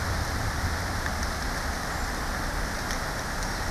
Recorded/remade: recorded